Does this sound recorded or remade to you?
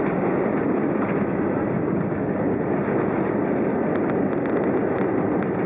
recorded